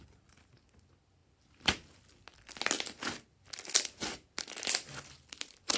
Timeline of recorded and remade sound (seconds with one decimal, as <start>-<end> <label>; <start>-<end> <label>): 0.0-5.8 recorded